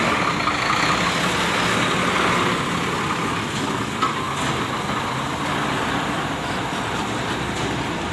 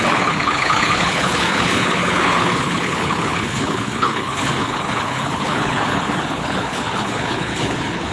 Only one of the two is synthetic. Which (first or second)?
second